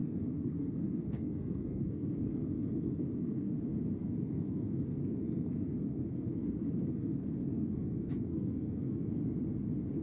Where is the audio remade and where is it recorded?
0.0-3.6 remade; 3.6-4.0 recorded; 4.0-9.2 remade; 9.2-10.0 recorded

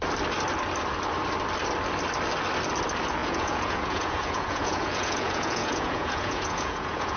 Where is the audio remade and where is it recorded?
0.0-3.2 recorded; 3.2-7.2 remade

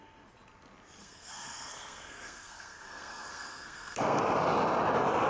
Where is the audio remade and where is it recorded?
0.0-1.0 recorded; 1.0-4.2 remade; 4.2-5.3 recorded

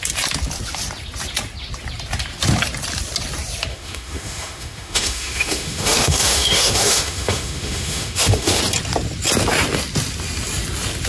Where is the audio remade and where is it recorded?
0.0-3.7 recorded; 3.7-8.6 remade; 8.6-11.1 recorded

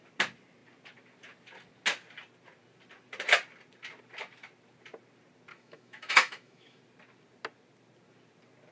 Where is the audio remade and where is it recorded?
0.0-5.5 recorded; 5.5-6.8 remade; 6.8-8.7 recorded

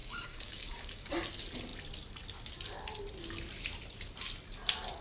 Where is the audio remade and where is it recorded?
0.0-1.1 remade; 1.1-5.0 recorded

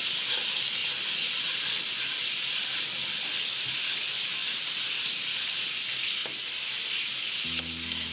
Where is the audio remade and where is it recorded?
0.0-8.1 recorded

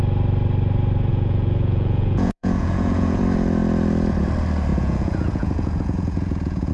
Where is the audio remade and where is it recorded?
0.0-1.1 recorded; 1.1-3.2 remade; 3.2-4.7 recorded; 4.7-6.7 remade